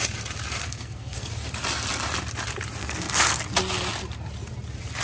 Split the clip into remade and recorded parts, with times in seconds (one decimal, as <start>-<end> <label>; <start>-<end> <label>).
0.0-0.6 recorded; 0.6-1.3 remade; 1.3-2.8 recorded; 2.8-3.4 remade; 3.4-5.0 recorded